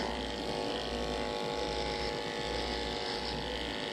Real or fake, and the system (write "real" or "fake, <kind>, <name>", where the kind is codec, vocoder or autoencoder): real